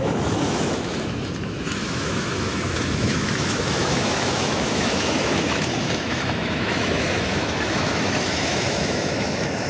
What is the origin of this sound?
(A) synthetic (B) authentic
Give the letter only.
A